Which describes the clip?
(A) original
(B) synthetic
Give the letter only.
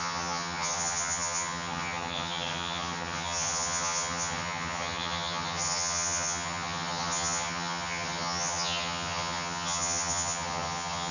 B